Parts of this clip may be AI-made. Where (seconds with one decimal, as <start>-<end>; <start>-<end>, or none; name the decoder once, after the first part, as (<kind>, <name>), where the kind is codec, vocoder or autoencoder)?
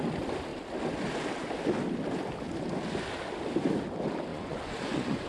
4.3-5.3 (vocoder, Vocos)